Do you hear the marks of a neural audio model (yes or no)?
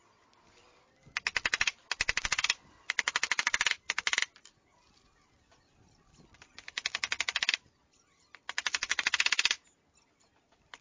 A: no